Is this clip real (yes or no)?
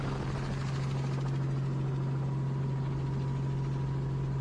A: yes